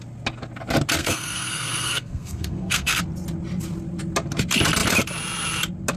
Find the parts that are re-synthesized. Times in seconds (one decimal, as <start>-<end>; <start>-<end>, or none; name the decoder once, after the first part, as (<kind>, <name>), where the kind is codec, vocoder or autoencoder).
1.0-3.0 (codec, SNAC)